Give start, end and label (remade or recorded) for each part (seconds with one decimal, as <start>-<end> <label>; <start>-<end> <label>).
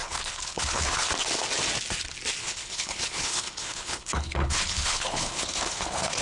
0.0-1.1 remade; 1.1-2.4 recorded; 2.4-6.2 remade